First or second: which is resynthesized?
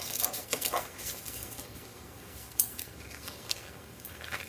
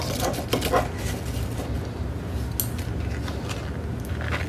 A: first